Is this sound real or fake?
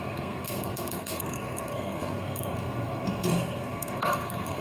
fake